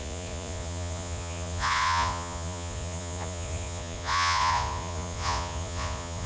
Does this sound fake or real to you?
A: fake